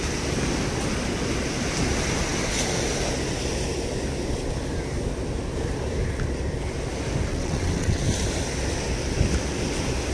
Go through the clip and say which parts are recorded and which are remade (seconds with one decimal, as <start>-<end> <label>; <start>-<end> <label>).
0.0-7.3 recorded; 7.3-8.0 remade; 8.0-10.1 recorded